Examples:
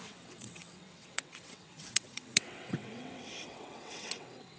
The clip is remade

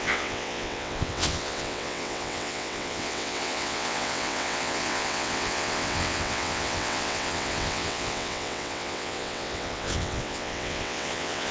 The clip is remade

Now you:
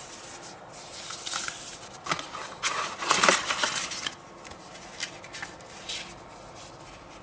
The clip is recorded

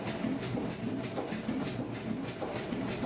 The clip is recorded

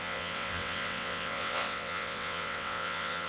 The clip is remade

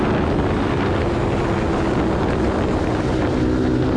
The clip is recorded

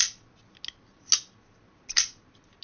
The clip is recorded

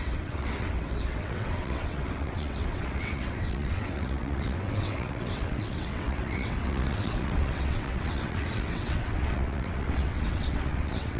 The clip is remade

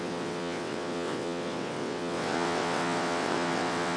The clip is remade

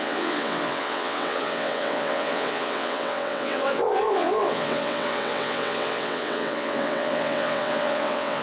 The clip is remade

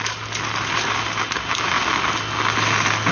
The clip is recorded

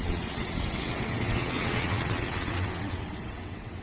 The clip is remade